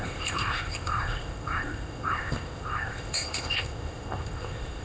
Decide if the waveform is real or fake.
fake